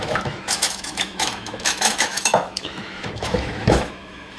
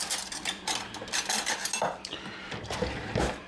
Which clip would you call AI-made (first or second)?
first